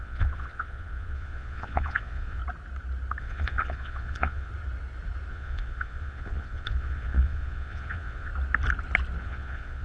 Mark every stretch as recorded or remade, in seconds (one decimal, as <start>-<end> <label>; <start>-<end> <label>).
0.0-2.4 remade; 2.4-3.2 recorded; 3.2-4.5 remade; 4.5-5.3 recorded; 5.3-8.3 remade; 8.3-9.2 recorded; 9.2-9.8 remade